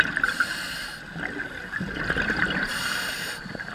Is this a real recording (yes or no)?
yes